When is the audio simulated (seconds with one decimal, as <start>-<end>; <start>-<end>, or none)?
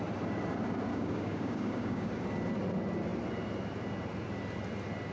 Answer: 0.9-2.1